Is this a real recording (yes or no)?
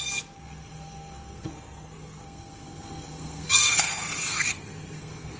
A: no